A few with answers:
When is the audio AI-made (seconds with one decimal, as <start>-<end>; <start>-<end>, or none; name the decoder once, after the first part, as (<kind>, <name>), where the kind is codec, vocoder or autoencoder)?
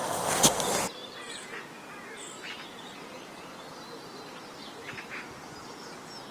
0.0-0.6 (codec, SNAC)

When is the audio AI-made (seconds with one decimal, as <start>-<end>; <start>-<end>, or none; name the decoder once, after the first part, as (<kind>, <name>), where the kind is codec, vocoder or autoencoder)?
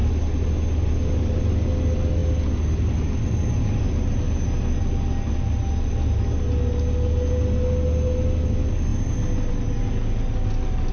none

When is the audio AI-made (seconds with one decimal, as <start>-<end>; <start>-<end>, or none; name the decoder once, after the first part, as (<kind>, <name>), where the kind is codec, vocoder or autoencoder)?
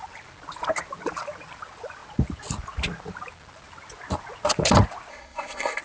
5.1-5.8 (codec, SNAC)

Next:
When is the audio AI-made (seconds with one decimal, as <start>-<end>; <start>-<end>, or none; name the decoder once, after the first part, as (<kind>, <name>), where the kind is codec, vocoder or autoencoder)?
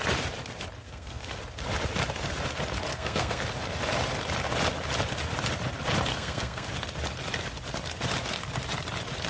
0.8-1.4 (codec, SNAC); 2.9-3.4; 6.1-6.7